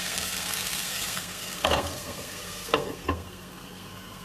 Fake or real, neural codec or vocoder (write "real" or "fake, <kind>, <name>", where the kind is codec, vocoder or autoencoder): fake, codec, SNAC